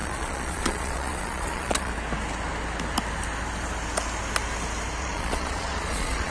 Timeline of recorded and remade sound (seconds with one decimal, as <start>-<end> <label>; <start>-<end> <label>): 0.0-1.9 remade; 1.9-5.0 recorded; 5.0-6.3 remade